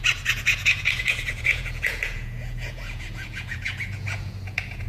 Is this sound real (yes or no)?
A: no